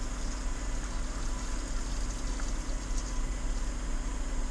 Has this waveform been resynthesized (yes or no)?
no